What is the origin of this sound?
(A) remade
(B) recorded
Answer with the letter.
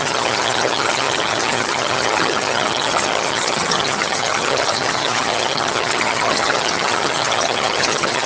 A